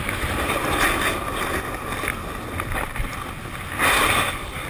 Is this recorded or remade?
recorded